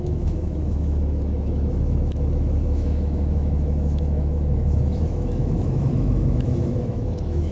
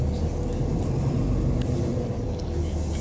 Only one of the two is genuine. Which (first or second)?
second